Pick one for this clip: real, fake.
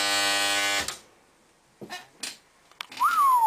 real